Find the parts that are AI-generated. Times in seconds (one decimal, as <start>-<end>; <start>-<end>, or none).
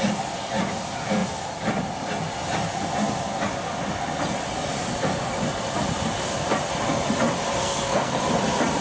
7.6-8.2